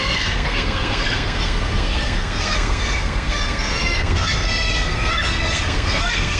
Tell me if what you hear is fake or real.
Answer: fake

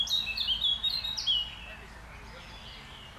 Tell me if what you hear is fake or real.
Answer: real